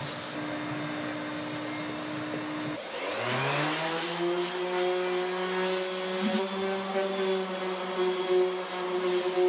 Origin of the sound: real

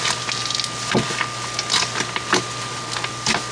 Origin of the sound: real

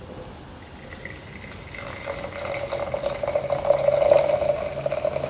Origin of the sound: real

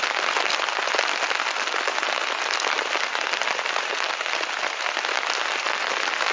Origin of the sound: real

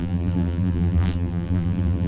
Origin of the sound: fake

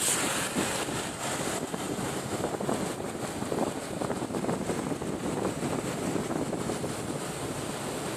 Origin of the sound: real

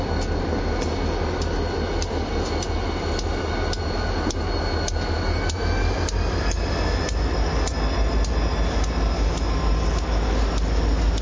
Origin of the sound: real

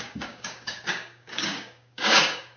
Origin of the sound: fake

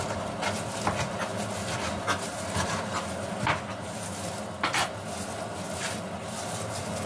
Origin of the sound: real